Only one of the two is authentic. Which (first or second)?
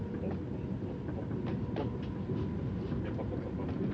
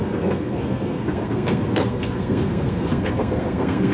first